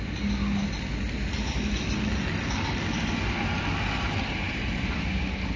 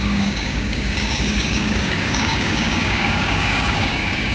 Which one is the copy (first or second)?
second